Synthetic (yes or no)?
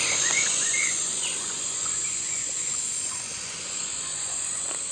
yes